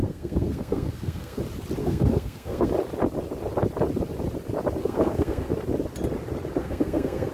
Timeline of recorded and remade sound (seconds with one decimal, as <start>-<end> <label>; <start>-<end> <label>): 0.0-1.4 remade; 1.4-1.8 recorded; 1.8-2.7 remade; 2.7-4.8 recorded; 4.8-5.5 remade; 5.5-6.6 recorded; 6.6-7.3 remade